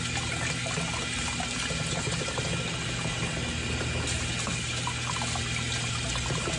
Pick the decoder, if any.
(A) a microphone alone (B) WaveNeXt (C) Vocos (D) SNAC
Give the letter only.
A